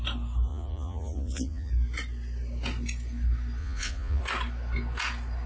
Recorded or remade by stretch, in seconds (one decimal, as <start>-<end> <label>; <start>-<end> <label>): 0.0-0.5 recorded; 0.5-1.7 remade; 1.7-3.6 recorded; 3.6-4.2 remade; 4.2-5.5 recorded